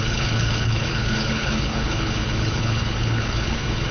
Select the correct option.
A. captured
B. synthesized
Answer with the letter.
B